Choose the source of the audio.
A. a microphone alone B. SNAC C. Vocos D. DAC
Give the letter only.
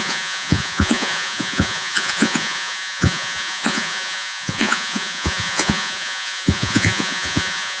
C